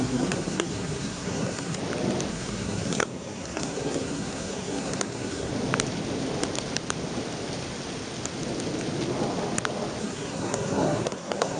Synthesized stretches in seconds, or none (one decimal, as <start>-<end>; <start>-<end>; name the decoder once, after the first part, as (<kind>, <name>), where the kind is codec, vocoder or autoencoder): 0.0-1.8 (codec, SNAC); 2.3-5.5; 10.0-11.6